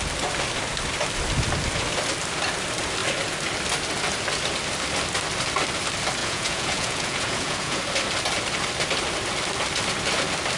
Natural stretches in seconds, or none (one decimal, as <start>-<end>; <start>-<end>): 0.0-6.2; 7.8-10.6